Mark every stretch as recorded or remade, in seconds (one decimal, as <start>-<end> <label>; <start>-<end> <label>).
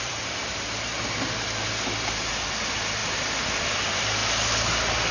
0.0-0.4 remade; 0.4-2.3 recorded; 2.3-3.0 remade; 3.0-3.6 recorded; 3.6-4.2 remade; 4.2-5.1 recorded